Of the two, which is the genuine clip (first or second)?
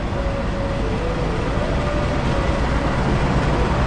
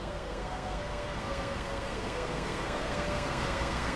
first